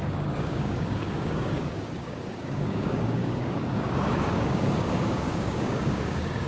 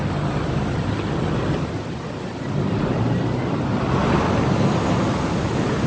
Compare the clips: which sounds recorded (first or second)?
second